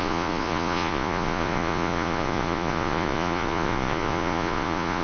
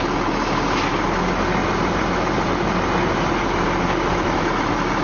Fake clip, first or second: first